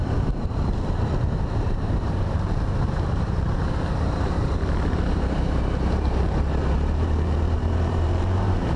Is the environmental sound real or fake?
fake